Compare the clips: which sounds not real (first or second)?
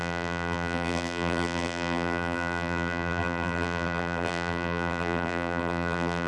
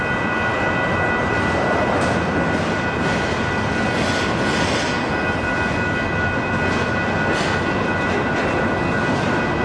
first